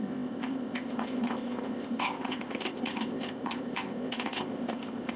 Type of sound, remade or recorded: remade